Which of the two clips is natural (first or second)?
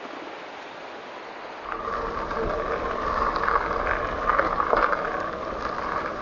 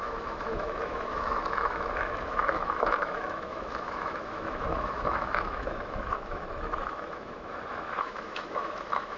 first